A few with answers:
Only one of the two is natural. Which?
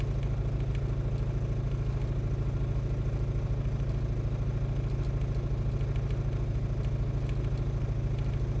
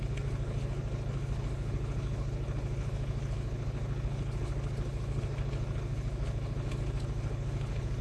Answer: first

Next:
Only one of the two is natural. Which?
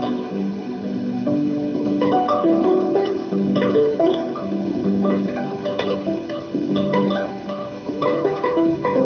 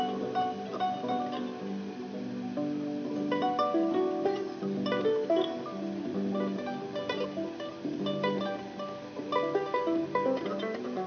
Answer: second